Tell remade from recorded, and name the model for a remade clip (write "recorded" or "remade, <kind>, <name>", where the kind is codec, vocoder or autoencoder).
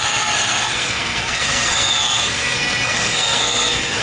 remade, codec, SNAC